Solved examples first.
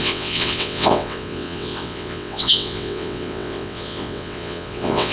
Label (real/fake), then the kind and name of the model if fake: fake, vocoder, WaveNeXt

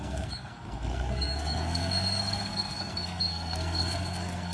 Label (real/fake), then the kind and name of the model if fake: fake, codec, SNAC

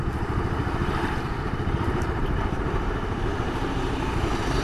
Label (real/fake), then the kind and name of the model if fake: fake, vocoder, BigVGAN v2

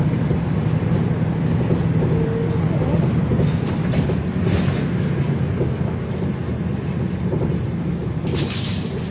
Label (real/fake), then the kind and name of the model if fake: real